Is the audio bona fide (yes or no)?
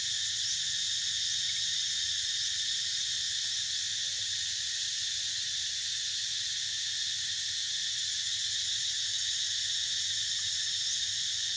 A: yes